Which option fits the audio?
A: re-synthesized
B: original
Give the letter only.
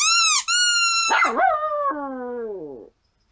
B